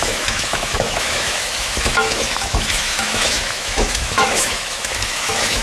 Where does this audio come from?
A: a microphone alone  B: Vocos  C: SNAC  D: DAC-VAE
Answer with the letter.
D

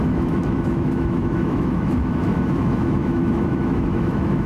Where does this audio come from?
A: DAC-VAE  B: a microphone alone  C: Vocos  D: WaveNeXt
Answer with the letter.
A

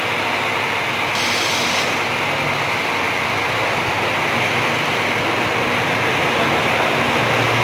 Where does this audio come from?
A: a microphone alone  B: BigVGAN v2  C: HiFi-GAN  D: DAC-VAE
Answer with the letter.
A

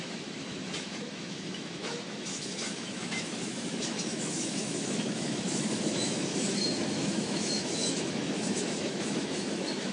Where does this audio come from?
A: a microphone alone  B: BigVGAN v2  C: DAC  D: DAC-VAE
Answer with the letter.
D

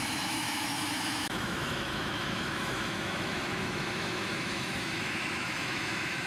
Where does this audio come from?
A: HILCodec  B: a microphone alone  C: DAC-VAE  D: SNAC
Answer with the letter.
C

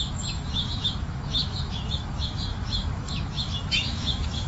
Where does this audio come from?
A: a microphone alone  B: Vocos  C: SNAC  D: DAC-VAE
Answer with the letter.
D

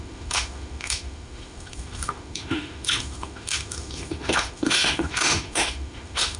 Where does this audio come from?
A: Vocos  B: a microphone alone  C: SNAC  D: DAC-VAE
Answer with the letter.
D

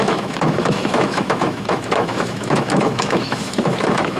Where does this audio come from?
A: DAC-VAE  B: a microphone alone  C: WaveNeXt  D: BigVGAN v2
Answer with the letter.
A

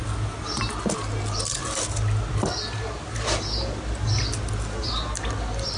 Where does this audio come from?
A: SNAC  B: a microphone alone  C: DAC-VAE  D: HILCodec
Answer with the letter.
B